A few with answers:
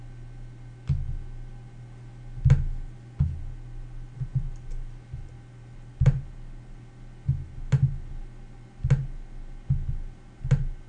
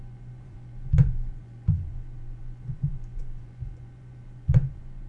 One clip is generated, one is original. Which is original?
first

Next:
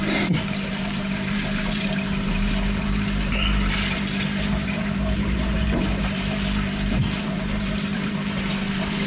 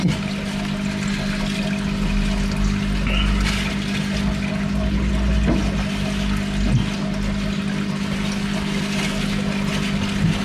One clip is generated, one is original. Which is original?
second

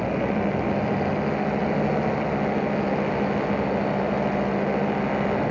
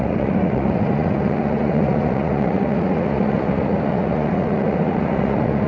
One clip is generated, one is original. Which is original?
first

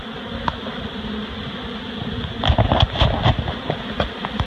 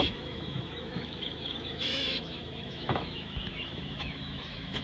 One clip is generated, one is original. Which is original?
first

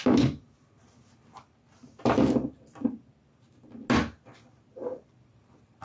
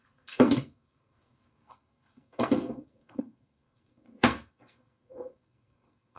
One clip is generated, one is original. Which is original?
first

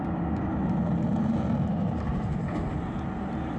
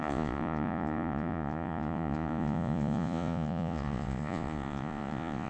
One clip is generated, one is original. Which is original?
first